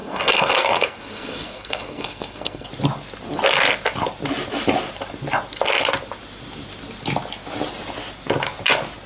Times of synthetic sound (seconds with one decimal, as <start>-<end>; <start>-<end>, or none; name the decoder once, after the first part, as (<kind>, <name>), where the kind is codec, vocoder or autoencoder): 0.0-2.7 (codec, SNAC)